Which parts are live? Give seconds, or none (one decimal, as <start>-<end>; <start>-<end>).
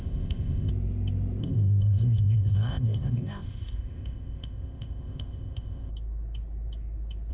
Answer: 0.7-1.4; 5.9-7.3